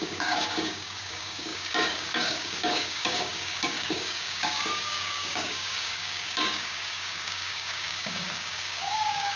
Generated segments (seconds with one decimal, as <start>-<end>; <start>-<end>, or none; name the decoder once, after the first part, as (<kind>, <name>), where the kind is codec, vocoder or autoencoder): 0.0-9.4 (codec, DAC)